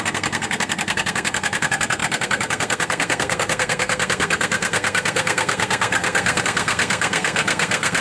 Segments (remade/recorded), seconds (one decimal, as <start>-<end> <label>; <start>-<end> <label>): 0.0-8.0 remade